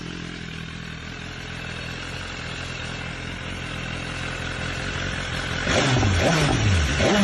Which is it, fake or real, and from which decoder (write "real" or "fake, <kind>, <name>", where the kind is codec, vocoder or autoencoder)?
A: real